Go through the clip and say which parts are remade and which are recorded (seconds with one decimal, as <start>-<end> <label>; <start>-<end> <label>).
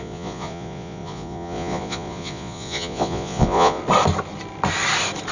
0.0-3.8 remade; 3.8-5.3 recorded